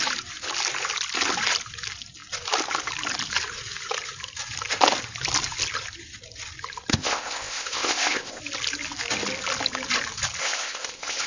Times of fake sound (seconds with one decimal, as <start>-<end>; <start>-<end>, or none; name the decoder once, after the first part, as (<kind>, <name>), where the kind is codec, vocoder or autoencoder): 6.9-8.4 (codec, ZipCodec); 10.4-11.3